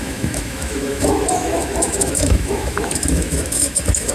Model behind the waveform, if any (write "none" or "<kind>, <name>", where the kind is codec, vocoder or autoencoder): autoencoder, DAC-VAE